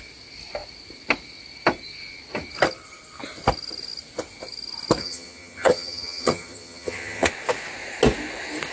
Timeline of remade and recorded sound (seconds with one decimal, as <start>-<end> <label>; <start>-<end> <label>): 0.0-5.0 recorded; 5.0-7.3 remade; 7.3-8.7 recorded